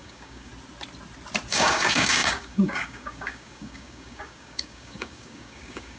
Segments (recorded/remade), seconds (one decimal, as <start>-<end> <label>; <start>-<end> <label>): 0.0-0.5 remade; 0.5-1.5 recorded; 1.5-6.0 remade